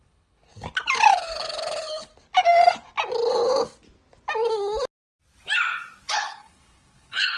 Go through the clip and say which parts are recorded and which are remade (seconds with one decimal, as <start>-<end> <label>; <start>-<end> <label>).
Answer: 0.0-0.5 remade; 0.5-1.1 recorded; 1.1-2.1 remade; 2.1-6.1 recorded; 6.1-7.4 remade